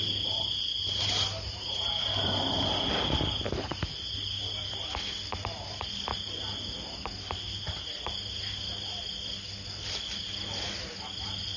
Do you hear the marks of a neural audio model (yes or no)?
no